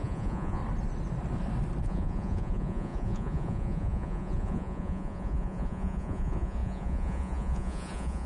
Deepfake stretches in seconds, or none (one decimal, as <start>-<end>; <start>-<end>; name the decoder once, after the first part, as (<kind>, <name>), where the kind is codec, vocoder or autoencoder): 0.0-0.6 (vocoder, Vocos); 1.8-8.3